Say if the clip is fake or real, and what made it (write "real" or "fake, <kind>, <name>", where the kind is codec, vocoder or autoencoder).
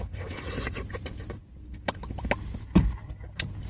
real